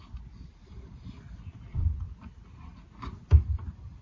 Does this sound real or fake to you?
real